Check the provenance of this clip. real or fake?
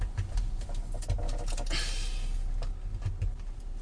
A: real